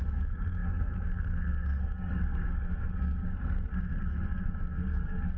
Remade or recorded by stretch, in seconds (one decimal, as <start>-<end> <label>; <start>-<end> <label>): 0.0-5.4 remade